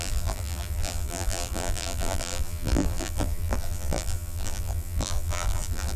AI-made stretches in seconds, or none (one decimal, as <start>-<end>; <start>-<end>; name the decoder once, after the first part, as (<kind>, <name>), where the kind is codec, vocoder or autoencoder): 0.0-6.0 (vocoder, BigVGAN v2)